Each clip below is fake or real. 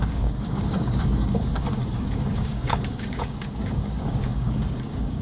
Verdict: fake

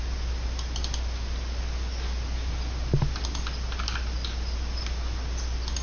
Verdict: real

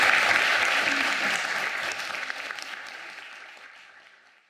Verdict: real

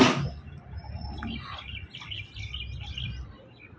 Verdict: real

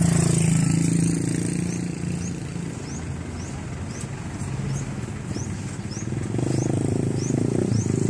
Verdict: real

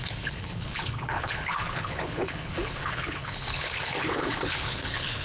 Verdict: fake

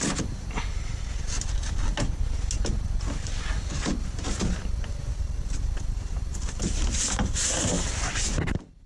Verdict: real